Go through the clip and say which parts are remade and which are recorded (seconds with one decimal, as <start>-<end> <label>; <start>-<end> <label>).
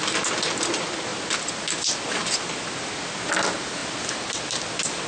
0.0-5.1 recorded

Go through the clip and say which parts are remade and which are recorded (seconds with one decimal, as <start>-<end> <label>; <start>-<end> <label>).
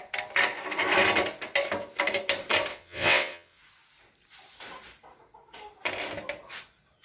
0.0-2.7 recorded; 2.7-3.6 remade; 3.6-7.0 recorded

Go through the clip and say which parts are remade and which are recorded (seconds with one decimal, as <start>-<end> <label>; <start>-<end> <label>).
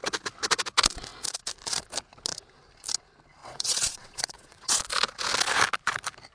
0.0-3.4 recorded; 3.4-4.8 remade; 4.8-6.3 recorded